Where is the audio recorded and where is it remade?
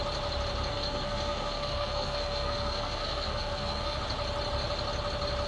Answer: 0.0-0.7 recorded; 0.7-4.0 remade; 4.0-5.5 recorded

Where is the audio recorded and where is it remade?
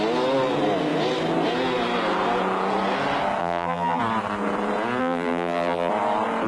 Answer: 0.0-3.4 recorded; 3.4-4.0 remade; 4.0-5.0 recorded; 5.0-5.9 remade; 5.9-6.5 recorded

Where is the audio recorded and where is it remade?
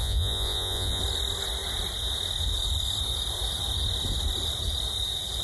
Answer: 0.0-1.0 remade; 1.0-5.4 recorded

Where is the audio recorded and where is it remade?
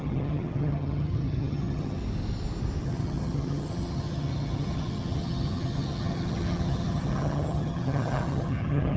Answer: 0.0-2.0 remade; 2.0-2.8 recorded; 2.8-9.0 remade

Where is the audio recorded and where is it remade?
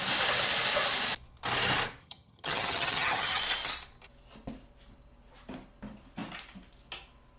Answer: 0.0-2.0 recorded; 2.0-3.4 remade; 3.4-7.4 recorded